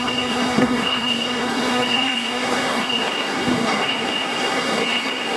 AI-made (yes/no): yes